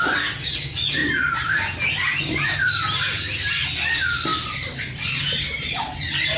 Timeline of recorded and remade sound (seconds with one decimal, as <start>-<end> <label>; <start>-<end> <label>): 0.0-1.0 recorded; 1.0-2.1 remade; 2.1-4.3 recorded; 4.3-6.0 remade; 6.0-6.4 recorded